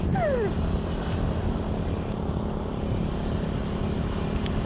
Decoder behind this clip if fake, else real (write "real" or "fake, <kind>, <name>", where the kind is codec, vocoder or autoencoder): real